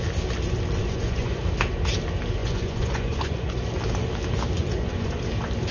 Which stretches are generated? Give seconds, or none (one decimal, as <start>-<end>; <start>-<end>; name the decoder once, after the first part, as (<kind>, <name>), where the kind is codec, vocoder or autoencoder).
0.8-1.4 (vocoder, Vocos); 2.4-3.6; 4.6-5.2